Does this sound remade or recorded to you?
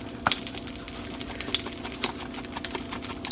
recorded